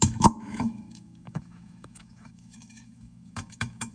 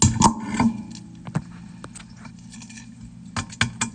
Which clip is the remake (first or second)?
first